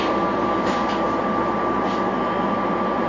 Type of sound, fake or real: real